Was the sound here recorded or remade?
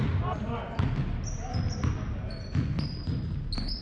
recorded